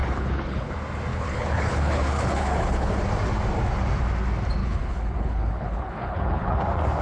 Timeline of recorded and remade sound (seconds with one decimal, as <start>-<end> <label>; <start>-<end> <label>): 0.0-0.7 remade; 0.7-1.1 recorded; 1.1-2.9 remade; 2.9-4.6 recorded; 4.6-6.6 remade; 6.6-7.0 recorded

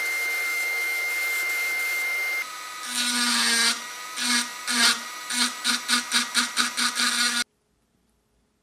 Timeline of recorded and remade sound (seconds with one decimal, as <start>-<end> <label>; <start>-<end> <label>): 0.0-0.5 recorded; 0.5-1.1 remade; 1.1-8.6 recorded

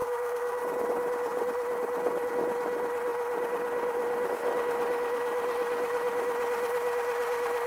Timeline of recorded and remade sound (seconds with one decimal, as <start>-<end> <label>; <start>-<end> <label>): 0.0-0.6 remade; 0.6-7.7 recorded

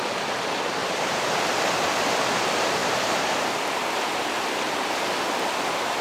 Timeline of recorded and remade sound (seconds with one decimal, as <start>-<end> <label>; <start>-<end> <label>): 0.0-0.8 recorded; 0.8-1.4 remade; 1.4-2.8 recorded; 2.8-3.4 remade; 3.4-6.0 recorded

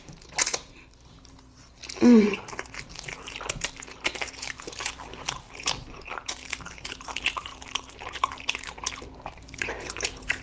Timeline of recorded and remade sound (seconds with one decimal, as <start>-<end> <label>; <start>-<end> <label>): 0.0-1.8 remade; 1.8-2.3 recorded; 2.3-10.4 remade

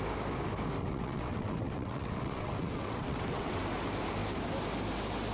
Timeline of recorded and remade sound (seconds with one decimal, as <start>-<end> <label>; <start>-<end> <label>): 0.0-0.8 recorded; 0.8-3.6 remade; 3.6-5.3 recorded

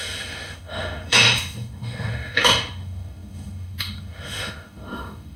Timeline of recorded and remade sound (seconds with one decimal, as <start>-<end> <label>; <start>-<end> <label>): 0.0-5.4 remade

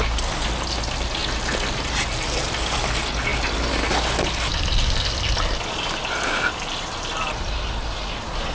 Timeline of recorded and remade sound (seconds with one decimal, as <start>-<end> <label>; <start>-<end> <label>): 0.0-8.5 recorded